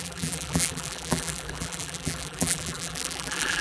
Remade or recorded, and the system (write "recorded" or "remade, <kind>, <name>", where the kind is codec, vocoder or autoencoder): remade, vocoder, BigVGAN v2